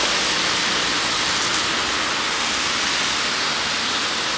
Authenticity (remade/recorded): recorded